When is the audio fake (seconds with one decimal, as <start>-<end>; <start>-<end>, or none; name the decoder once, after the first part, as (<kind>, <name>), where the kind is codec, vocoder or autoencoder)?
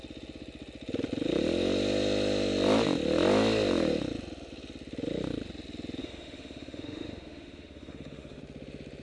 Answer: 6.0-8.4 (autoencoder, DAC-VAE)